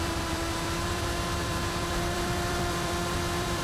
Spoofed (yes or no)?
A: yes